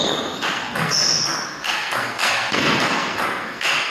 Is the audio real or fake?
fake